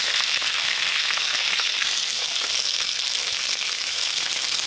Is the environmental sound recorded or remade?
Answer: remade